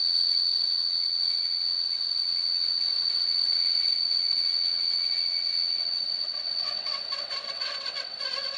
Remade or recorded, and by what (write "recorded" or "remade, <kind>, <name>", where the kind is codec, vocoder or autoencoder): remade, vocoder, WaveNeXt